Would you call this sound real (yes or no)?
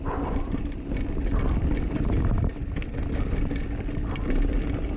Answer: yes